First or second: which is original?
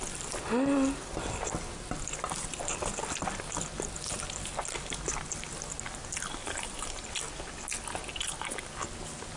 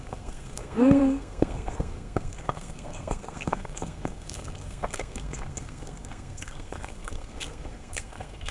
first